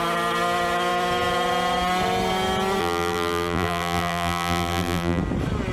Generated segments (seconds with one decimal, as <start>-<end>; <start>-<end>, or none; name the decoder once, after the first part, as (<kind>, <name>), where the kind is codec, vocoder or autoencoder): 2.8-5.2 (vocoder, BigVGAN v2)